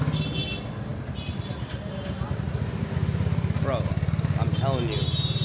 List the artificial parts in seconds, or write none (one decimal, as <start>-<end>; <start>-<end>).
none